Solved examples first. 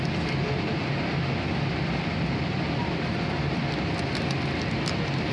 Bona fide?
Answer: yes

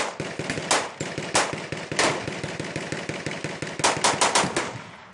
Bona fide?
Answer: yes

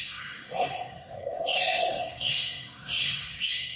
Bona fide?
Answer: no